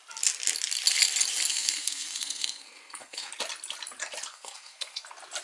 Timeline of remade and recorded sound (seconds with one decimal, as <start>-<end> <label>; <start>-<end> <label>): 0.0-1.5 recorded; 1.5-3.3 remade; 3.3-4.3 recorded; 4.3-5.0 remade; 5.0-5.4 recorded